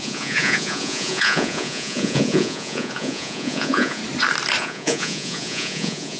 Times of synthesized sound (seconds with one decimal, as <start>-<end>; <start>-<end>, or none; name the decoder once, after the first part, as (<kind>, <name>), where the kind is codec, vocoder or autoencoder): 0.0-4.0 (vocoder, Vocos); 4.6-6.2